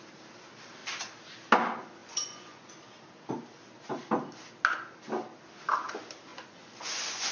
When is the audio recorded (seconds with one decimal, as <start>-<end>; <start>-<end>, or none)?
0.0-2.0; 2.7-6.3